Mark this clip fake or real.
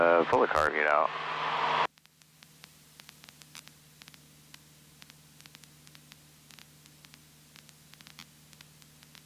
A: real